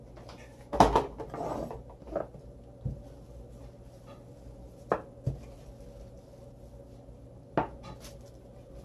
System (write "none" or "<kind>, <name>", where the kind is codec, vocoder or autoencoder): none